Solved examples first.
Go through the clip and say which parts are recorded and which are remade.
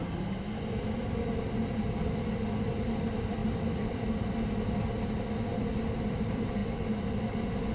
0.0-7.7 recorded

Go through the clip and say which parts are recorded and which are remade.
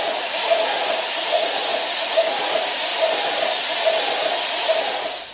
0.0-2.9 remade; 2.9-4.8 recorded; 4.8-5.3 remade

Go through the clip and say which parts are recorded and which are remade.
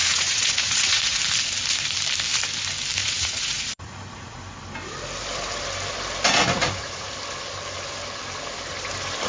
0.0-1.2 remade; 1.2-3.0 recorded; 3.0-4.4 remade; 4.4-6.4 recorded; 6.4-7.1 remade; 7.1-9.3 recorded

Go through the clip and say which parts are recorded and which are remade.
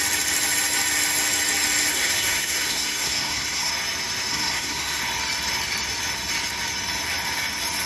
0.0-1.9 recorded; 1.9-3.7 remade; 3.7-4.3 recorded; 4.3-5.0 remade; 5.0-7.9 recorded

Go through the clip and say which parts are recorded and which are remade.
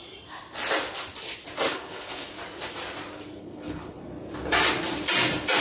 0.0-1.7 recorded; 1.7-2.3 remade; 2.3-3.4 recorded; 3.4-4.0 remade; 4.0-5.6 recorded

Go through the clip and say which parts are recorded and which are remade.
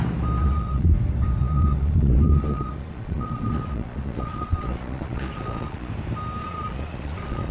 0.0-0.4 recorded; 0.4-0.9 remade; 0.9-1.4 recorded; 1.4-5.9 remade; 5.9-6.4 recorded; 6.4-7.5 remade